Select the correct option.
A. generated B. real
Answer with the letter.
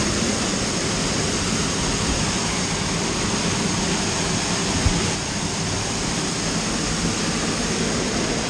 B